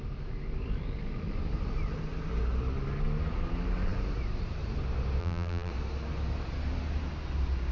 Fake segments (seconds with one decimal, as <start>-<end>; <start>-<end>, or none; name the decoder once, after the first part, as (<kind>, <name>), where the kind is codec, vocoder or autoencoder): 5.2-5.7 (vocoder, BigVGAN v2)

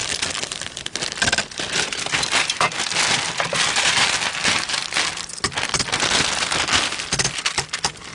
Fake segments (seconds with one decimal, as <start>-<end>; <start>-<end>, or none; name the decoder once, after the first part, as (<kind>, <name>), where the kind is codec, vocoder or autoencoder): 0.0-0.6 (vocoder, BigVGAN v2); 1.4-5.6

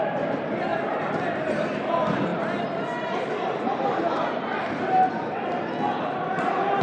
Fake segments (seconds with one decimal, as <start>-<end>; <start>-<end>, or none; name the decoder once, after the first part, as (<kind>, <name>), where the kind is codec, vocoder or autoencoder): 0.7-1.4 (vocoder, BigVGAN v2)

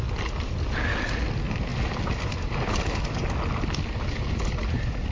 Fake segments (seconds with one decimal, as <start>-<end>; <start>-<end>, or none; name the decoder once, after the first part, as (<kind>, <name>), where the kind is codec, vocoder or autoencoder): 1.7-5.1 (vocoder, BigVGAN v2)

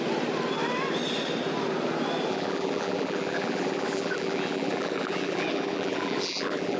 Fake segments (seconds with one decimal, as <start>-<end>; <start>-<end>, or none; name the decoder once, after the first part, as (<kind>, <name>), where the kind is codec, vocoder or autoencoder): 2.3-6.8 (vocoder, BigVGAN v2)

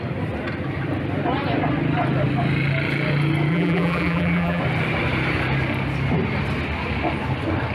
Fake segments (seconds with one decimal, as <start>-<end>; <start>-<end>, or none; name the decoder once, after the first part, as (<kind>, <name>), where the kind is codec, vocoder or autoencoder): 3.5-4.6 (vocoder, BigVGAN v2)

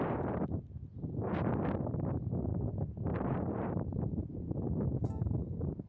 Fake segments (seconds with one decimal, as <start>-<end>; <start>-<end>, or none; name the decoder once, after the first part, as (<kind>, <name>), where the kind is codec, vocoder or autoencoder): 2.5-4.7 (vocoder, BigVGAN v2)

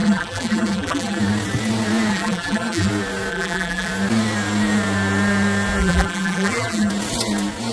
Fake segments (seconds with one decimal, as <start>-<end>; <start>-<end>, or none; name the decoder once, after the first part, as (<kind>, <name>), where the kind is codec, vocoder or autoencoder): 0.0-1.2 (vocoder, BigVGAN v2); 2.1-2.9; 3.3-3.9; 5.8-6.9